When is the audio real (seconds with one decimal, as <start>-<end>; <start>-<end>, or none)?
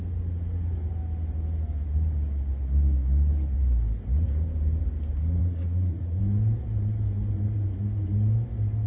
0.0-5.4; 6.2-8.9